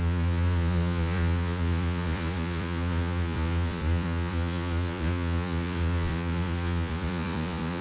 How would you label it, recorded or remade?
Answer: remade